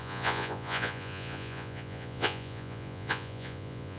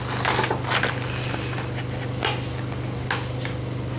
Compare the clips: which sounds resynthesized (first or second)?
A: first